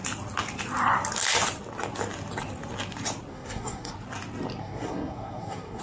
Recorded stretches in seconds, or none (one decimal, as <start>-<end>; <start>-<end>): 0.0-3.3; 3.9-4.6